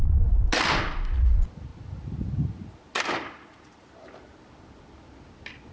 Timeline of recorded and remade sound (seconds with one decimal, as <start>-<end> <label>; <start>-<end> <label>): 0.0-5.7 recorded